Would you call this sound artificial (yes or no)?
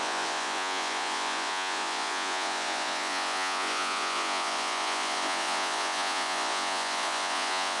yes